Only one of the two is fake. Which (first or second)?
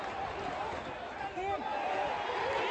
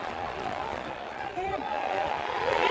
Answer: second